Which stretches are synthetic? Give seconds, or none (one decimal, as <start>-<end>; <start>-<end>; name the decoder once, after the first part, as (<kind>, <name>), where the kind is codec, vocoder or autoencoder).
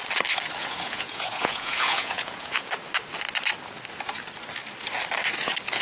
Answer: 0.6-2.7 (vocoder, Vocos)